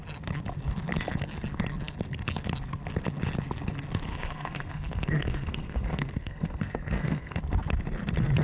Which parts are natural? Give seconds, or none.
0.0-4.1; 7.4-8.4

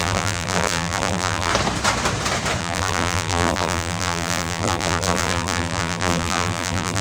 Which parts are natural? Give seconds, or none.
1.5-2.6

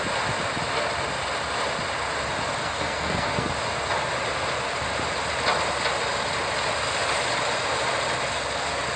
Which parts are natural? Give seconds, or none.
0.0-2.6; 3.5-9.0

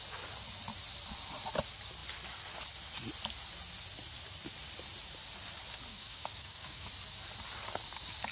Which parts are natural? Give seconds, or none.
0.0-5.9; 6.9-8.3